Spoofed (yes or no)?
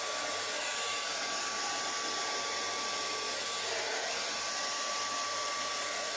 no